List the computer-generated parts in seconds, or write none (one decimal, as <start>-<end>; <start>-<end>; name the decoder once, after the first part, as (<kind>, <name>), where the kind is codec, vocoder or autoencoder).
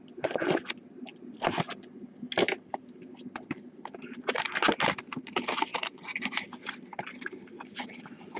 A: none